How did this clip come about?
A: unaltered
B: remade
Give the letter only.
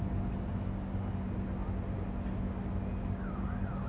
A